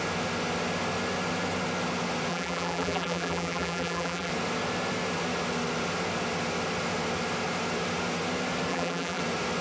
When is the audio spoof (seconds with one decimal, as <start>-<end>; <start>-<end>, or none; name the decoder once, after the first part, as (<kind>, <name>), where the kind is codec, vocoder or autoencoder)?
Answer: 2.3-4.3 (vocoder, BigVGAN v2); 8.7-9.2